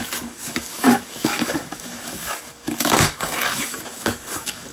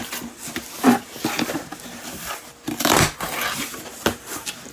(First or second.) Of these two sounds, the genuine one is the second